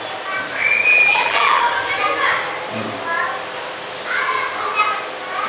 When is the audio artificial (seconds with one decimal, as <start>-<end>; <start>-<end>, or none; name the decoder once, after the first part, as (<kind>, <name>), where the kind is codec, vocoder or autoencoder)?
0.9-1.6 (vocoder, BigVGAN v2)